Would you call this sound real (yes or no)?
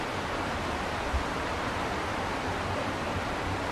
no